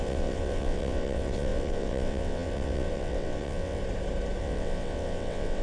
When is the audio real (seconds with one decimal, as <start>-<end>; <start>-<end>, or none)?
3.8-4.4